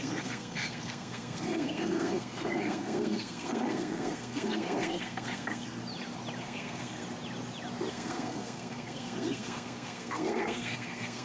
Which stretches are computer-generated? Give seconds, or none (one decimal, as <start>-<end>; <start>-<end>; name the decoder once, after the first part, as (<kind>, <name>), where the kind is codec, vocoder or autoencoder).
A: 0.0-5.8 (codec, SNAC); 6.4-7.0; 7.9-11.2